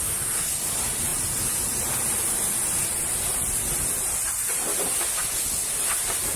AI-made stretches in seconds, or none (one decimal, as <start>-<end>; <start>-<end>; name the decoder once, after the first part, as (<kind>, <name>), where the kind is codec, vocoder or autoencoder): none